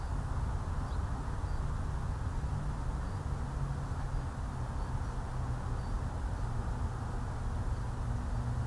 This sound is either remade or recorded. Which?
recorded